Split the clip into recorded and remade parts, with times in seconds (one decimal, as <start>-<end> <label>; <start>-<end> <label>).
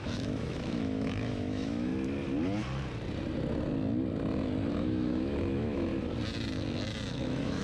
0.0-1.9 remade; 1.9-4.7 recorded; 4.7-5.9 remade; 5.9-7.1 recorded; 7.1-7.6 remade